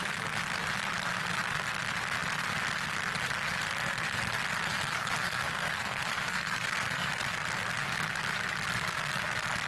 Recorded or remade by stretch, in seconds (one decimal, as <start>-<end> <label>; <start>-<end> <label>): 0.0-4.7 recorded; 4.7-7.1 remade; 7.1-9.7 recorded